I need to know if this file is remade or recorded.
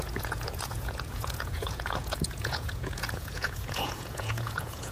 remade